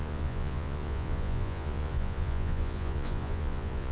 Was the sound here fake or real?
fake